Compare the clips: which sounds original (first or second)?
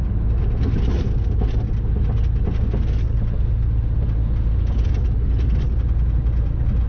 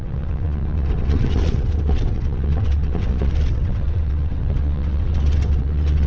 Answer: first